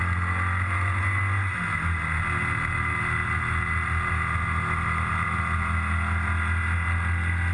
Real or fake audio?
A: real